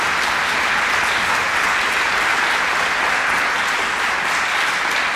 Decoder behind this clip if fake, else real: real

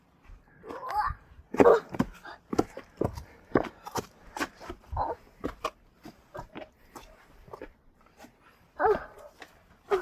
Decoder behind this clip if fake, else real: fake, vocoder, BigVGAN v2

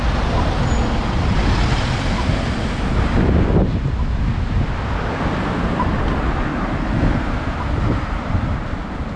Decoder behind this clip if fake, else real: real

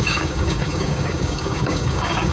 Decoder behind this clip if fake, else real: fake, codec, DAC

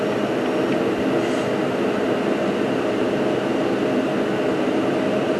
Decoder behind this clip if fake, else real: real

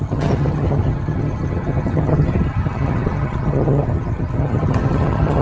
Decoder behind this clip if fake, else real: fake, vocoder, HiFi-GAN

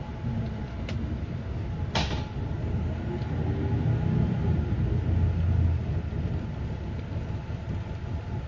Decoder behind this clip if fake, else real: real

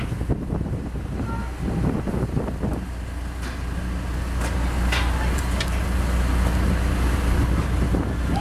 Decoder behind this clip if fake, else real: real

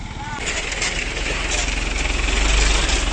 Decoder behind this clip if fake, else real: real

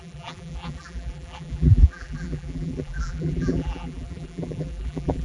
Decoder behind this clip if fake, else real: fake, vocoder, BigVGAN v2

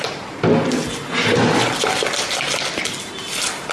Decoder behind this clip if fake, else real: real